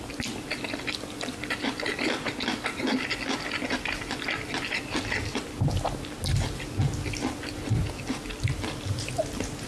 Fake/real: real